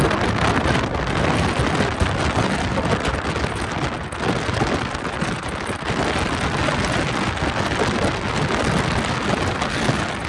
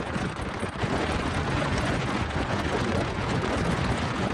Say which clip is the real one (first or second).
first